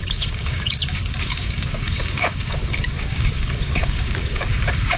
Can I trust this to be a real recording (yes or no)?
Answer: no